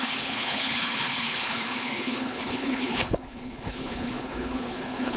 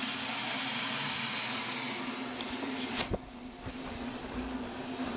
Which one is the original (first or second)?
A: second